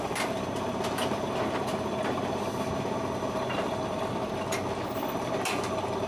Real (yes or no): yes